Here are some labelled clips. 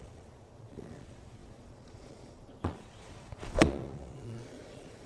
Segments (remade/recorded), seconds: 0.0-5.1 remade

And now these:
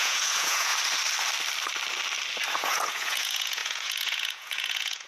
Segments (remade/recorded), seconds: 0.0-0.7 remade; 0.7-2.6 recorded; 2.6-5.1 remade

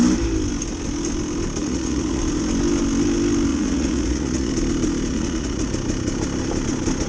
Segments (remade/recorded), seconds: 0.0-1.6 recorded; 1.6-2.2 remade; 2.2-3.5 recorded; 3.5-4.5 remade; 4.5-5.1 recorded; 5.1-5.7 remade; 5.7-7.1 recorded

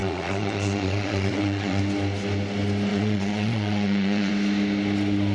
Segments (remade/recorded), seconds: 0.0-1.8 remade; 1.8-2.9 recorded; 2.9-4.3 remade; 4.3-5.3 recorded